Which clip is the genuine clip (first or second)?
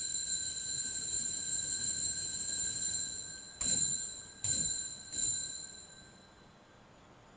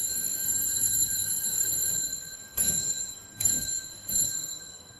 first